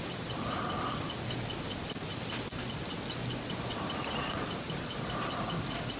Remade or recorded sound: recorded